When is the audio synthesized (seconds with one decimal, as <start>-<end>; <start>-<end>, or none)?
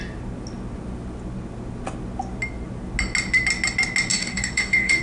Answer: 4.1-5.0